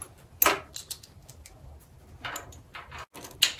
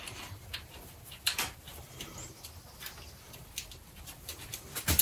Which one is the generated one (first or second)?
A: second